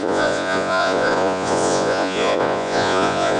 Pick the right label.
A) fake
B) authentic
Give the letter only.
A